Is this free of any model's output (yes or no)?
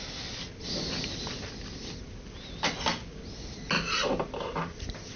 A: yes